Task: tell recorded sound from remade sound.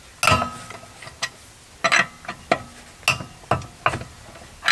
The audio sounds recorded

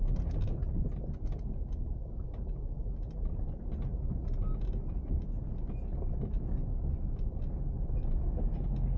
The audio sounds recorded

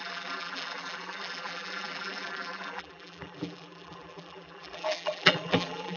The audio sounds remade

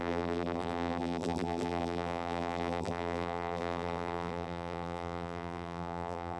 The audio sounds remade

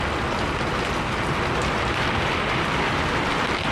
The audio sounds recorded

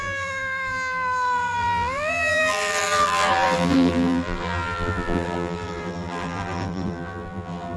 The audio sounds remade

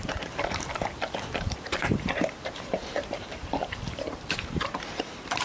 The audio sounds remade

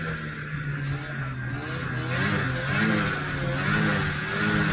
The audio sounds recorded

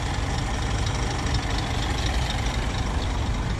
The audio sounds recorded